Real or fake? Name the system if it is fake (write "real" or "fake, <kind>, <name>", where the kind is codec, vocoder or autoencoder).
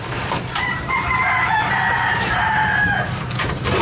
fake, vocoder, BigVGAN v2